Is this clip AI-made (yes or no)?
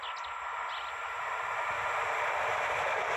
no